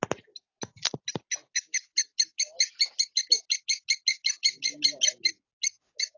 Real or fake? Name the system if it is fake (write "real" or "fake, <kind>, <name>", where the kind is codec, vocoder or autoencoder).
real